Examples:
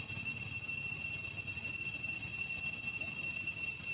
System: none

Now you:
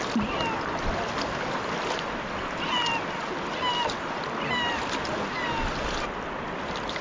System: none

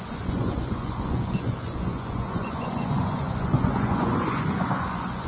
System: vocoder, Vocos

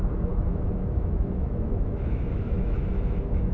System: autoencoder, DAC-VAE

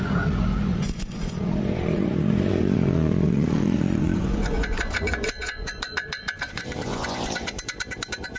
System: vocoder, Vocos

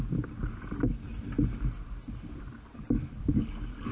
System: none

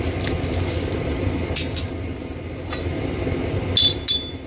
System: none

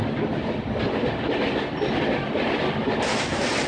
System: none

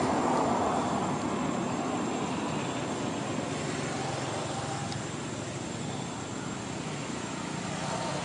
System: none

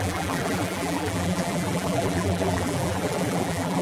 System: vocoder, BigVGAN v2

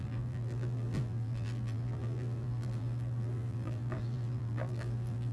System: vocoder, BigVGAN v2